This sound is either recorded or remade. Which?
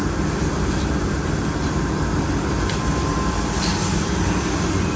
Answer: recorded